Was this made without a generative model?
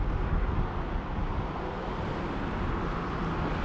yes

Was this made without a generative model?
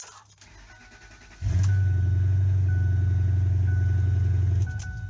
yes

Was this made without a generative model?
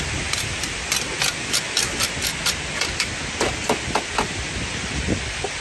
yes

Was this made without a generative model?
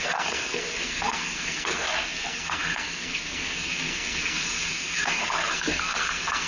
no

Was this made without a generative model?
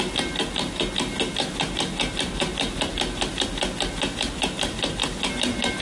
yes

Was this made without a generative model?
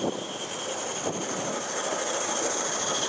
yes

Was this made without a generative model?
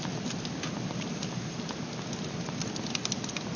yes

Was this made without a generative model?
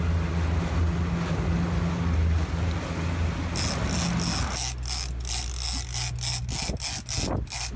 yes